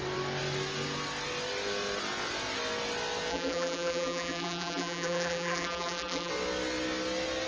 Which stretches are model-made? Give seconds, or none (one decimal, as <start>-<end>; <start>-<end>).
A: 3.3-6.3